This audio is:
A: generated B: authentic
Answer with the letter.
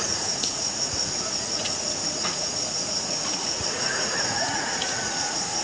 A